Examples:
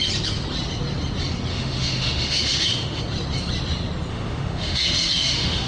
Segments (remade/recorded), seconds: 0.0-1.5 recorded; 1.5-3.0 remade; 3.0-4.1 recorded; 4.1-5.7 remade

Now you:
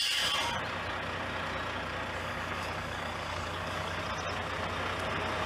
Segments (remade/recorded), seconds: 0.0-2.2 recorded; 2.2-4.0 remade; 4.0-5.5 recorded